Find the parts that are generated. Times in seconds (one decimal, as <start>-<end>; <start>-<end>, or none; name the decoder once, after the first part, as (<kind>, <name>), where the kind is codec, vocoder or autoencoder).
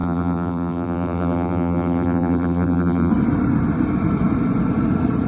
0.0-3.1 (vocoder, BigVGAN v2)